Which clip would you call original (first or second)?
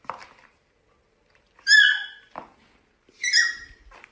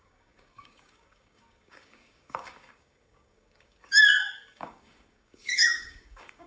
first